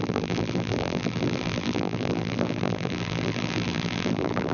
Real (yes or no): no